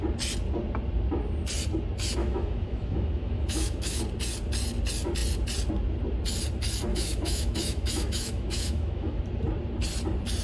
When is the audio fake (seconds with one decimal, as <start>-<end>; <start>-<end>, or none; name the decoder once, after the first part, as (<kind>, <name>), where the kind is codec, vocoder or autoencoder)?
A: 2.2-4.0 (autoencoder, DAC-VAE); 6.9-9.2